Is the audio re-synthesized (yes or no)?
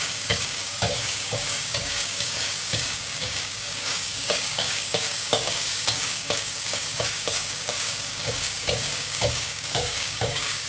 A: yes